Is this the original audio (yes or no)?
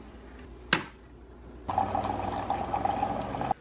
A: yes